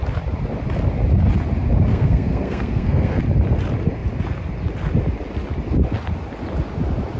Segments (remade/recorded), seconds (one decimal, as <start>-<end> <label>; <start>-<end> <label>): 0.0-1.9 recorded; 1.9-3.2 remade; 3.2-7.2 recorded